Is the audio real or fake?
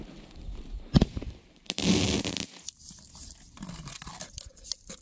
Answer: real